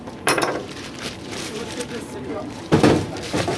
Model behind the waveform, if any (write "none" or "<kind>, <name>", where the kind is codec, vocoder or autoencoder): vocoder, BigVGAN v2